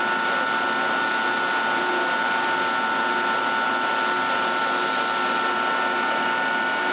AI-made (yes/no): no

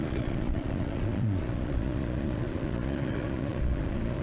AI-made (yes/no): yes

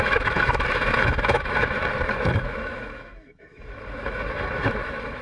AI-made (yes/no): yes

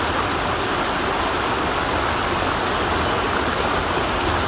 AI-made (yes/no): no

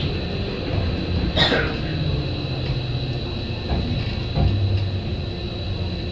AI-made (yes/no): no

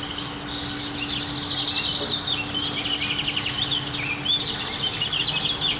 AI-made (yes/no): no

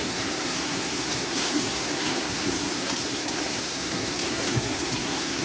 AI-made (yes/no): yes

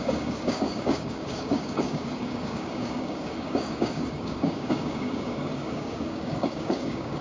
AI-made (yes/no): yes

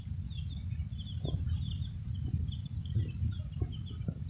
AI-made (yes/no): no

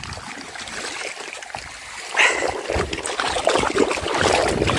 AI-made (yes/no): no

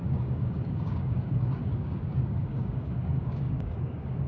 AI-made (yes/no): yes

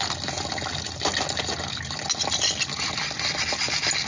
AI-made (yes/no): no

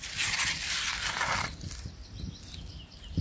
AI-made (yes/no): no